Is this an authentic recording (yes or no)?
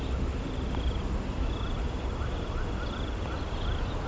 yes